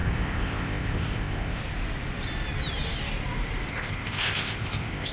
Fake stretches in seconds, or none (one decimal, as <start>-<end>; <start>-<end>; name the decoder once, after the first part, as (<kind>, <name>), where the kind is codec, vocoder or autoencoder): 0.0-1.6 (codec, ZipCodec); 3.7-5.1